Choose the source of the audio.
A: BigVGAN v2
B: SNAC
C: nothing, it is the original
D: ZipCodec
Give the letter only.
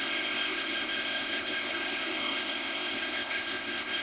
D